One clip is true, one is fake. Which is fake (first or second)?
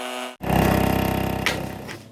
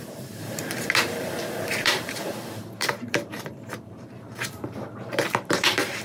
second